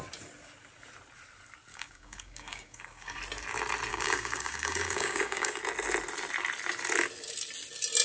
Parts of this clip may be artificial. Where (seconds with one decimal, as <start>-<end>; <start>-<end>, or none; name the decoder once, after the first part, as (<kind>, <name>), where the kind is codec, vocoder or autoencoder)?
1.7-3.2 (codec, DAC); 3.9-5.6